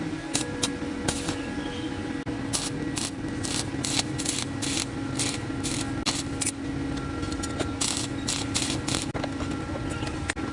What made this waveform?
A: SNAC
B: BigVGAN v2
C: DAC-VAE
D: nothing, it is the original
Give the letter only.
D